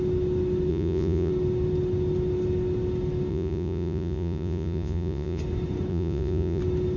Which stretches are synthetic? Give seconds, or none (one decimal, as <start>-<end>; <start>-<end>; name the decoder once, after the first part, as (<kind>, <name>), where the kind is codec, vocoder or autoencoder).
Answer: 0.7-1.3 (vocoder, Vocos); 3.3-5.4; 5.9-6.6